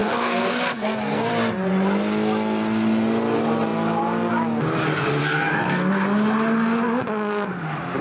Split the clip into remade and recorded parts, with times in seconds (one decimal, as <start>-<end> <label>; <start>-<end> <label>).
0.0-1.3 remade; 1.3-5.2 recorded; 5.2-5.9 remade; 5.9-8.0 recorded